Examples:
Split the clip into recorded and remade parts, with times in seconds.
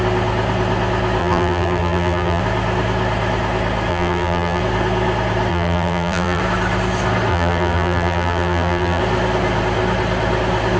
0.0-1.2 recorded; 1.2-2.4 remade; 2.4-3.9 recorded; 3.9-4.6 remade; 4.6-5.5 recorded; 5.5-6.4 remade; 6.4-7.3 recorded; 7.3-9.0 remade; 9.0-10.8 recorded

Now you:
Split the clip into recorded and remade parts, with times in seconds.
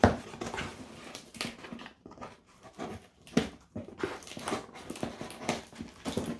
0.0-0.7 recorded; 0.7-4.5 remade; 4.5-6.4 recorded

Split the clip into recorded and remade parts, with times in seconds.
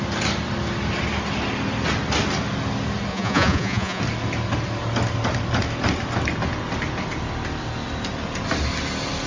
0.0-3.1 recorded; 3.1-4.0 remade; 4.0-9.3 recorded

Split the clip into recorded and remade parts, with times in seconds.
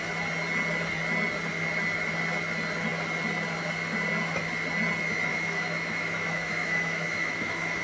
0.0-5.3 recorded; 5.3-7.8 remade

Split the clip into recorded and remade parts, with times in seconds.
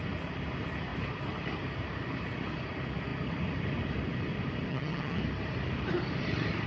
0.0-4.7 recorded; 4.7-5.2 remade; 5.2-6.7 recorded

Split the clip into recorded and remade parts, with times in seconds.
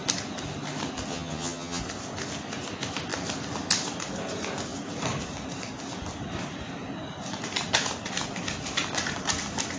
0.0-1.1 recorded; 1.1-1.8 remade; 1.8-9.8 recorded